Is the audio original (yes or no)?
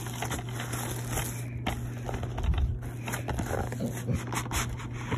yes